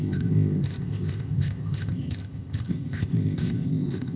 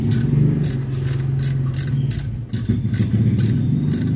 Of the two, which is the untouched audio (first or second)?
second